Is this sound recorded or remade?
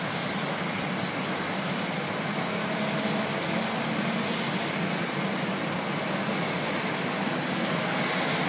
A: recorded